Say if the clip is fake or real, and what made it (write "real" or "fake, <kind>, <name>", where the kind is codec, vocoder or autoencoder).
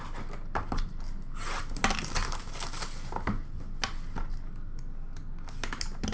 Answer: real